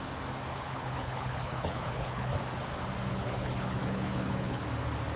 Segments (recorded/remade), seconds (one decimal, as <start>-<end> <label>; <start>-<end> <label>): 0.0-0.5 recorded; 0.5-2.3 remade; 2.3-3.1 recorded; 3.1-4.6 remade; 4.6-5.2 recorded